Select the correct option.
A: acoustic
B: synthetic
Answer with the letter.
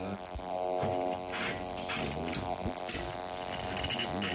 A